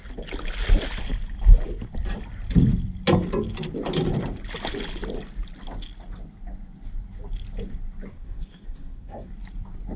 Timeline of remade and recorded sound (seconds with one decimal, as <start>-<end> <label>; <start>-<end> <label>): 0.0-8.1 recorded; 8.1-9.3 remade; 9.3-10.0 recorded